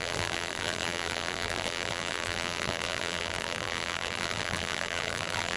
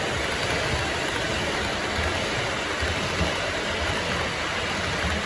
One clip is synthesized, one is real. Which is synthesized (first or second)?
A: first